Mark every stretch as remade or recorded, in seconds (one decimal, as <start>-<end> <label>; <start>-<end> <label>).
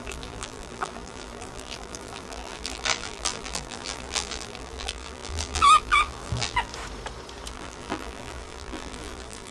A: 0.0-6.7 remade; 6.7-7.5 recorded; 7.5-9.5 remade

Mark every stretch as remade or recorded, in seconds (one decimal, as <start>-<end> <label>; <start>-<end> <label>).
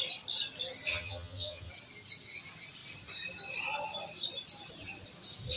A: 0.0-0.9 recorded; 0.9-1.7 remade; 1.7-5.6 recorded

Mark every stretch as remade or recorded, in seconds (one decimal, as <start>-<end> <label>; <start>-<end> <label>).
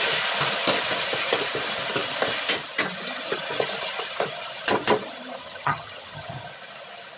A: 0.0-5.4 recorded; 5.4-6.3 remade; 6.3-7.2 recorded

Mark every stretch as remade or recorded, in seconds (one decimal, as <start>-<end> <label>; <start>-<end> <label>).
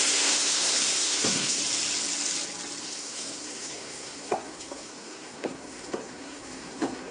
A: 0.0-1.6 remade; 1.6-2.8 recorded; 2.8-7.1 remade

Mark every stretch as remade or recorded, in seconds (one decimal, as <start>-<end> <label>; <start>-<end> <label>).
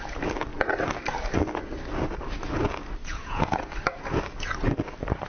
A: 0.0-3.1 recorded; 3.1-3.7 remade; 3.7-5.3 recorded